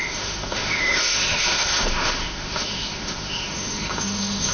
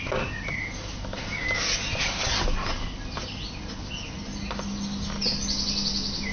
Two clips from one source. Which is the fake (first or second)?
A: first